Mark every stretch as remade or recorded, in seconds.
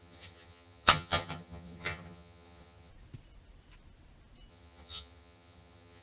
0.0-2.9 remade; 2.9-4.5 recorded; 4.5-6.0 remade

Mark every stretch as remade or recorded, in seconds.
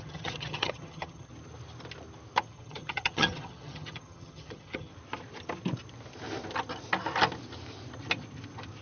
0.0-1.3 remade; 1.3-2.4 recorded; 2.4-4.9 remade; 4.9-8.8 recorded